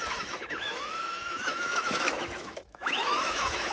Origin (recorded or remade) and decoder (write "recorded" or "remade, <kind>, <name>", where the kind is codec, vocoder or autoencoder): remade, autoencoder, DAC-VAE